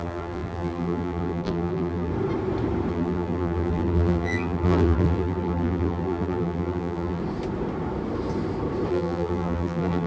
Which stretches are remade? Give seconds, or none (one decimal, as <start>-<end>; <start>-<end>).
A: 0.0-2.1; 2.9-7.2; 8.9-10.1